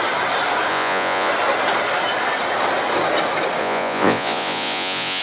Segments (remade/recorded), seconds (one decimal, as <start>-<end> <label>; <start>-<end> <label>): 0.0-0.7 recorded; 0.7-1.3 remade; 1.3-3.6 recorded; 3.6-5.2 remade